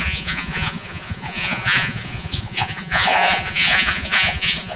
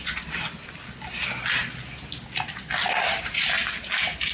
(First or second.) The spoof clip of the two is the first